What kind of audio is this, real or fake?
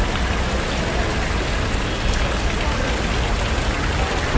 real